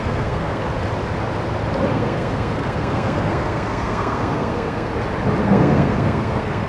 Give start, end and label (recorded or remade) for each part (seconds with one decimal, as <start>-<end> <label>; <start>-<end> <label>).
0.0-0.6 remade; 0.6-1.9 recorded; 1.9-4.9 remade; 4.9-5.4 recorded; 5.4-6.7 remade